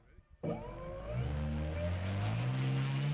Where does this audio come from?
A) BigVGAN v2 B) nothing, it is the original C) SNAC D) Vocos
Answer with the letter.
B